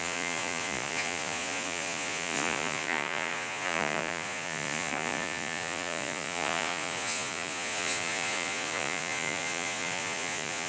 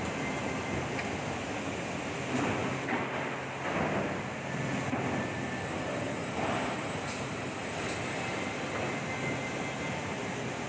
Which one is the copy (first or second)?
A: first